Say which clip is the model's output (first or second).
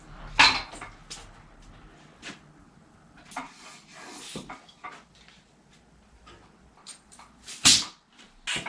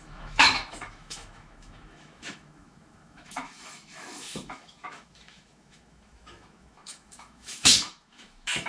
second